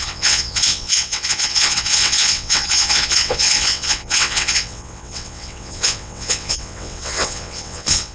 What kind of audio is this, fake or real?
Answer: fake